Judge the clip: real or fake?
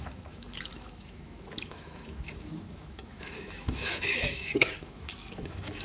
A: fake